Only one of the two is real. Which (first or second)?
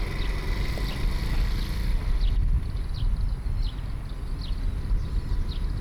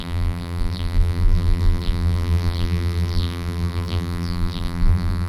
first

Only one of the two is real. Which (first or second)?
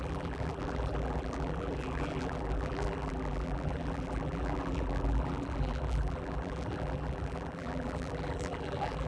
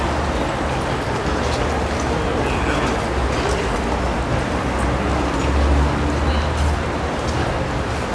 second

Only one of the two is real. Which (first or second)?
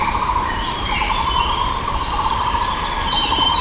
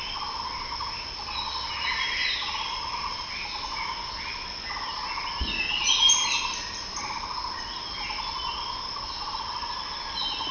second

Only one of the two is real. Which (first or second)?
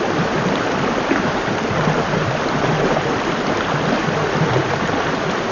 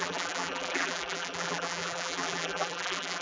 first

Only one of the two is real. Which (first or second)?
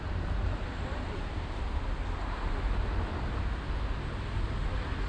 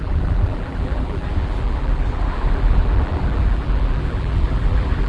first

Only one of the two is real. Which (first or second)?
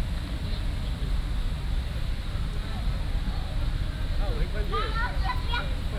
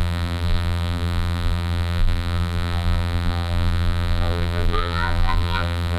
first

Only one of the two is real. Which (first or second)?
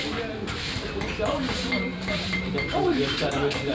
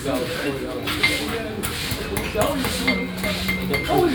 second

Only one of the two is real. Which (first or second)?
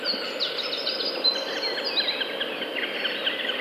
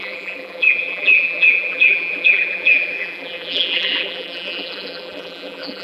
first